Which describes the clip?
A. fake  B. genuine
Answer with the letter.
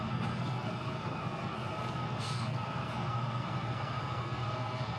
A